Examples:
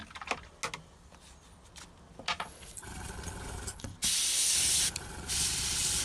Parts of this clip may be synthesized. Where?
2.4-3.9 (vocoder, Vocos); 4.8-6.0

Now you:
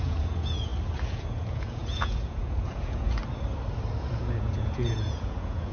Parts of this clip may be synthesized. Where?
0.0-0.7 (vocoder, Vocos); 1.2-3.2; 4.2-5.7